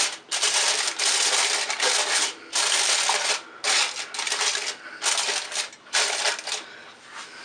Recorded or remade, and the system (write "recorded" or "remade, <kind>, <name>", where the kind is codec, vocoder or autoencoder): recorded